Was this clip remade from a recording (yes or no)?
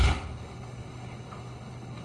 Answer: yes